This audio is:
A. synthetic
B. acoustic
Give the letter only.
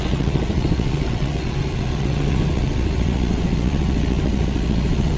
A